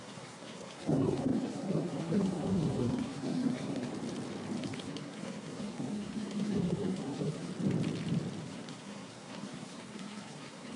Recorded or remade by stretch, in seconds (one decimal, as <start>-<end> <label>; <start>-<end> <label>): 0.0-3.9 remade; 3.9-4.6 recorded; 4.6-7.5 remade; 7.5-8.4 recorded; 8.4-10.8 remade